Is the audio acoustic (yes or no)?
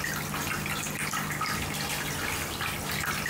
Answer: yes